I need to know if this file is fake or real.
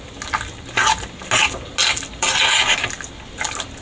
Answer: real